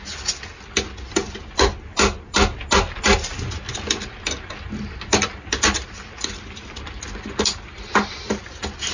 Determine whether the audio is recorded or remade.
recorded